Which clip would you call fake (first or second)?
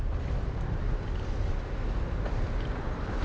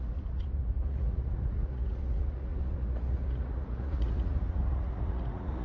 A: second